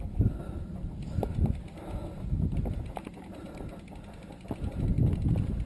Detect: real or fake real